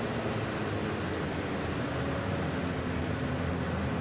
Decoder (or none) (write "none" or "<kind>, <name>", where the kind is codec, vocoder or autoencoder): none